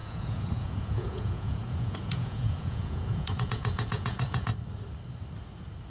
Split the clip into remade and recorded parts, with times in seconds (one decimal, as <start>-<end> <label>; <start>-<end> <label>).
0.0-4.5 remade; 4.5-5.9 recorded